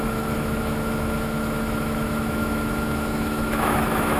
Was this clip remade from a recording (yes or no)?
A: yes